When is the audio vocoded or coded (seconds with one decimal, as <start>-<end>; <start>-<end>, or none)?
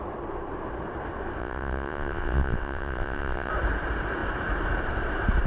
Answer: 1.4-3.5